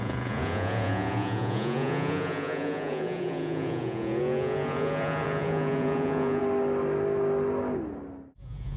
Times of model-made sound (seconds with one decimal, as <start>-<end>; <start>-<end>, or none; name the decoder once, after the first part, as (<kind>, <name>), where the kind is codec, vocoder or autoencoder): 0.0-6.4 (vocoder, Vocos); 8.4-8.8